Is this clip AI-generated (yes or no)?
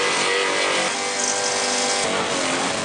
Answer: no